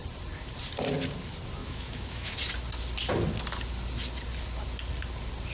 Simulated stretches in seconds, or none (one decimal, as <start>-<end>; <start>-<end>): 1.6-2.4

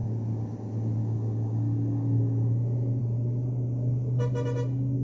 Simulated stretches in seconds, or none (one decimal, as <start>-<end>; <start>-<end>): none